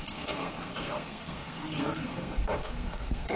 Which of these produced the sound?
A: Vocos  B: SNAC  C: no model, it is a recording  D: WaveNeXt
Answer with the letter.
B